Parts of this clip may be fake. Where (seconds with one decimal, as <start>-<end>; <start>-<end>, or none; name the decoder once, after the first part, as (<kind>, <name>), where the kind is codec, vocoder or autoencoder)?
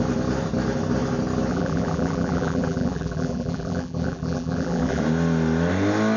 1.5-5.0 (vocoder, BigVGAN v2)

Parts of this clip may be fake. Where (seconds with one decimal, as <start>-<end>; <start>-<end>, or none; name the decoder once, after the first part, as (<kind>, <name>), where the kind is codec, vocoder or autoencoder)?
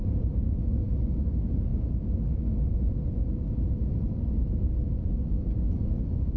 0.0-0.9 (vocoder, BigVGAN v2)